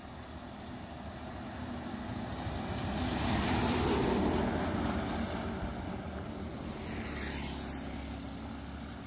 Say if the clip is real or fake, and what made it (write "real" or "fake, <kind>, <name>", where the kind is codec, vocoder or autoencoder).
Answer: real